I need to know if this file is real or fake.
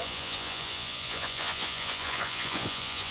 fake